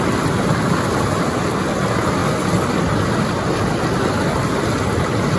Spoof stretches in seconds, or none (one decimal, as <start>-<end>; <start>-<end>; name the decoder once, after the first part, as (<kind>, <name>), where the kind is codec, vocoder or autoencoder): none